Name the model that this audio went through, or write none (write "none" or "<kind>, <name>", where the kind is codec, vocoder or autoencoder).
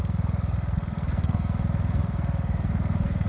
codec, SNAC